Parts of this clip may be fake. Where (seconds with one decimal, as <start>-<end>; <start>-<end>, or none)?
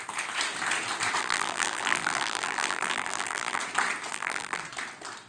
1.2-3.6; 4.1-4.6